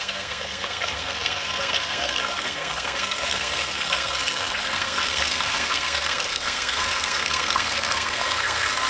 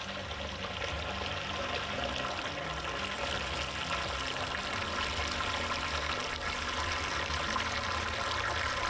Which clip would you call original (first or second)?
second